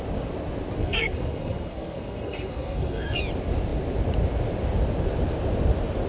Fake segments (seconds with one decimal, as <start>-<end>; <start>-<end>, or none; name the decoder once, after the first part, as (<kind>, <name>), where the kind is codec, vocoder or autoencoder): 0.8-3.2 (codec, SNAC)